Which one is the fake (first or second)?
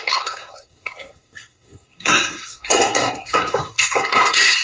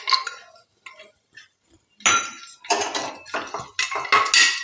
first